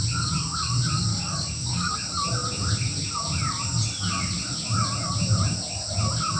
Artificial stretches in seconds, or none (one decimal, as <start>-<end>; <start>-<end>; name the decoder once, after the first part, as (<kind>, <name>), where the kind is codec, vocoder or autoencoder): 1.1-1.9 (codec, DAC)